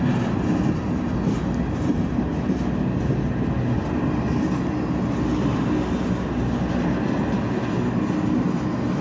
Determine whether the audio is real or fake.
real